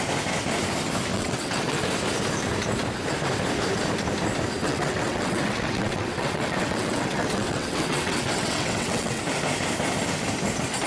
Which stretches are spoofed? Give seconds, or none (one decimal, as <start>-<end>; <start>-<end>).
1.1-1.8; 4.6-9.2